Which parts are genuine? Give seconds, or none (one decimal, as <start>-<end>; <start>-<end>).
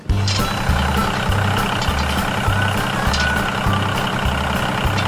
0.0-5.1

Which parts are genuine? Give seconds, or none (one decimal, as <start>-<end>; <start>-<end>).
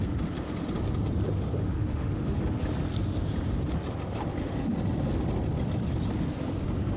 0.0-1.6; 2.4-7.0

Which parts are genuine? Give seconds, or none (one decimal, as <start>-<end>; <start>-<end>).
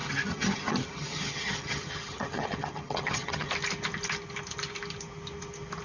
3.5-5.8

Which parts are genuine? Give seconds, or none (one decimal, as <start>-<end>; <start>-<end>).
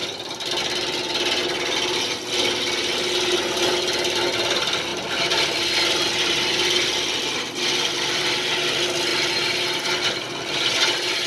0.0-11.3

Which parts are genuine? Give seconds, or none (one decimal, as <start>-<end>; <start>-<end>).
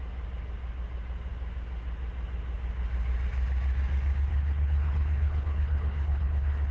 0.0-4.3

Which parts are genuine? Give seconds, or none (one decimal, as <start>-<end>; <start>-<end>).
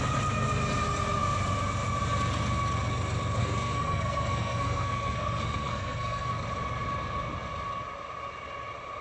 0.0-3.4; 6.3-9.0